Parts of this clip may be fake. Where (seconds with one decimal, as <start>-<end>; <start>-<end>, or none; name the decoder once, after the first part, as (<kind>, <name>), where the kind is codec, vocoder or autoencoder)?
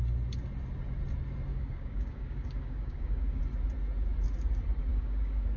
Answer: 1.5-3.4 (codec, DAC); 4.9-5.6